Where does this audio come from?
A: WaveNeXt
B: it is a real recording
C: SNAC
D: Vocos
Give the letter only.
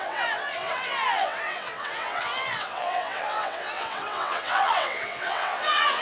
A